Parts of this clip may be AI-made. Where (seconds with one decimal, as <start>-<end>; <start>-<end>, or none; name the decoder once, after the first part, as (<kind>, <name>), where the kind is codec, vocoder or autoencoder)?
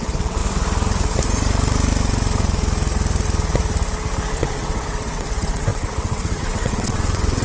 0.0-0.4 (vocoder, WaveNeXt); 4.3-7.4